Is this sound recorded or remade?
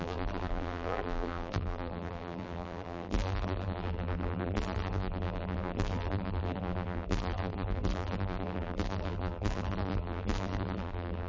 remade